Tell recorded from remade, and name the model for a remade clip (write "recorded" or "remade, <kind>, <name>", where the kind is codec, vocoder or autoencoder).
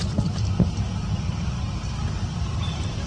recorded